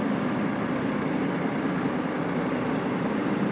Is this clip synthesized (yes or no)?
no